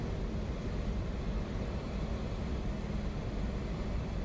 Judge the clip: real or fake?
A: real